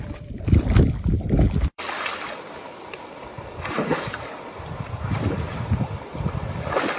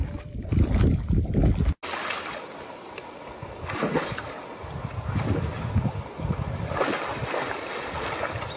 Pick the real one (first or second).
second